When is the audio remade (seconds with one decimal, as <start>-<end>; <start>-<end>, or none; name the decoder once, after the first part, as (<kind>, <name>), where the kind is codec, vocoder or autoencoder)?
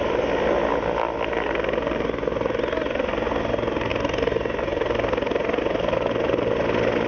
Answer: none